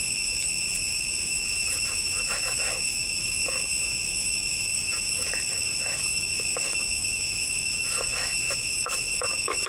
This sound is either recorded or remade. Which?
remade